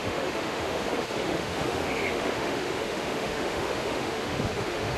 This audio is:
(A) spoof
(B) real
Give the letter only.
A